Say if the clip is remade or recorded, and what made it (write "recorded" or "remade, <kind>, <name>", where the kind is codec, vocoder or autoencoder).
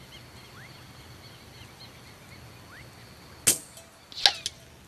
recorded